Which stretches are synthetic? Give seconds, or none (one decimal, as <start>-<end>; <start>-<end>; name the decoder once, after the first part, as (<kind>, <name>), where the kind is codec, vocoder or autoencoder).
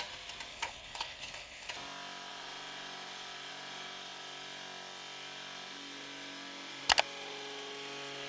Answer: 0.5-1.7 (codec, HILCodec)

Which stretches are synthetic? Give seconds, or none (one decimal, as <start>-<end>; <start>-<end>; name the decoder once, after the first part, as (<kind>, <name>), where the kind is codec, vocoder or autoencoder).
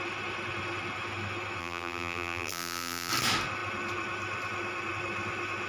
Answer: 1.6-3.1 (vocoder, BigVGAN v2)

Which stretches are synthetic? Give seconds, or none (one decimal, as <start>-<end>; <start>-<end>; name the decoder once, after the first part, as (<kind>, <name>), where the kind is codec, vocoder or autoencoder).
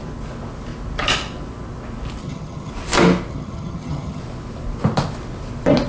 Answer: 2.2-2.7 (vocoder, HiFi-GAN); 3.3-4.2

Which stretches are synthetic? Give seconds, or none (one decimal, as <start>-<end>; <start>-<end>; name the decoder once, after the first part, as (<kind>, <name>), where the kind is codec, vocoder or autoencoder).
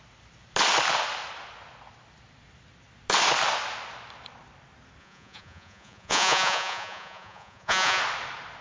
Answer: 5.0-8.0 (vocoder, Vocos)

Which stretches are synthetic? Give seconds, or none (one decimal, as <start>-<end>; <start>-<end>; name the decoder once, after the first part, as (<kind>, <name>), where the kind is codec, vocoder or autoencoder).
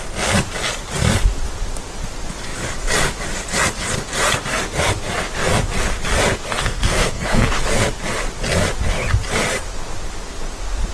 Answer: 6.6-7.5 (codec, SNAC)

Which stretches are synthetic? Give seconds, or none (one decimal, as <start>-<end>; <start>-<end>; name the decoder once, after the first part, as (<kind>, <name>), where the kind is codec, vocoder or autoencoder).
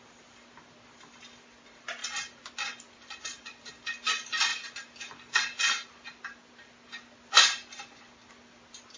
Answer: none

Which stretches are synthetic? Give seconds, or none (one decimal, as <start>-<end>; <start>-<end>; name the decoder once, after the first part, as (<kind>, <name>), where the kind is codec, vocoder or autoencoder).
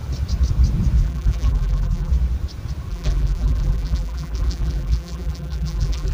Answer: 1.0-2.1 (vocoder, BigVGAN v2); 2.9-6.1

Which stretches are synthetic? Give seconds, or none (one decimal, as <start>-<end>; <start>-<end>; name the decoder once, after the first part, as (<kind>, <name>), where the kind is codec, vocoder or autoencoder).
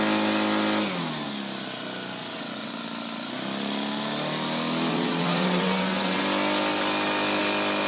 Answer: 2.2-2.7 (vocoder, WaveNeXt); 4.9-6.2